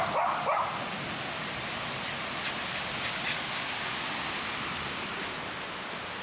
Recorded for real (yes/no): yes